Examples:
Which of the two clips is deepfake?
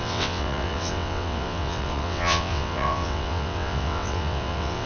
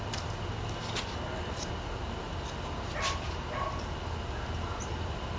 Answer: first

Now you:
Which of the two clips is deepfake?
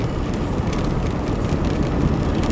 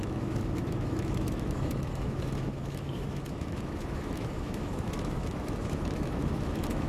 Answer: second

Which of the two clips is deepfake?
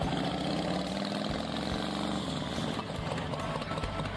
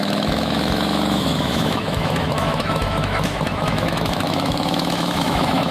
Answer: second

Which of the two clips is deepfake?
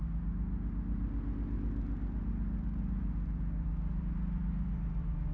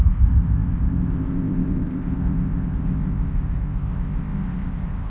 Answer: second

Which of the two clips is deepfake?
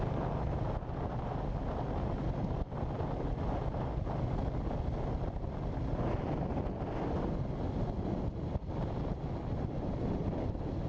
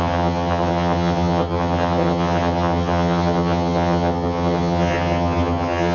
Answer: second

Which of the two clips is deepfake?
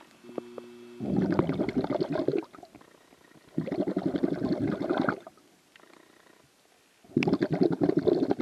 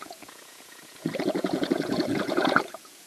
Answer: second